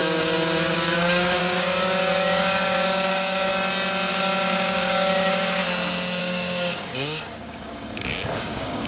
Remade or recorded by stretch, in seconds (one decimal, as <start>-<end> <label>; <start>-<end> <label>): 0.0-3.5 remade; 3.5-4.1 recorded; 4.1-5.6 remade; 5.6-6.2 recorded; 6.2-8.9 remade